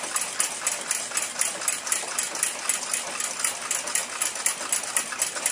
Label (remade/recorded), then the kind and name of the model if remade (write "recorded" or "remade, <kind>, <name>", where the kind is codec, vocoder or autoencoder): recorded